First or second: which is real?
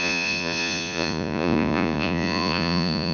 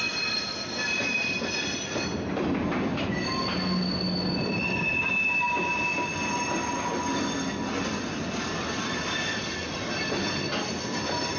second